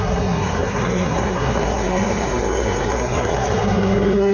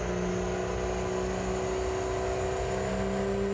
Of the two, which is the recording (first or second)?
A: second